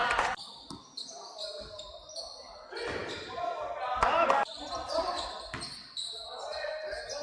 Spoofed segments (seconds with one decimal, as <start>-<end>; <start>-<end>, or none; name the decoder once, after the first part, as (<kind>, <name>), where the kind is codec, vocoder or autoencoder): 6.0-6.7 (vocoder, Vocos)